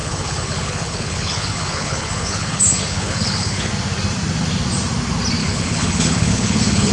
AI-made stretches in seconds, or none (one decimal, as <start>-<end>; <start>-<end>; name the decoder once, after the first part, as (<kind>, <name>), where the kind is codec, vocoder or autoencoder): 0.0-3.7 (codec, HILCodec); 5.4-6.9